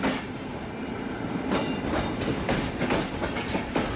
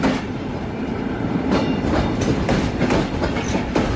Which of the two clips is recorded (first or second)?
first